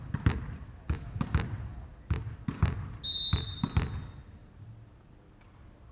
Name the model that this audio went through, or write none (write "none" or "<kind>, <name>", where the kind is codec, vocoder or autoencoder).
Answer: none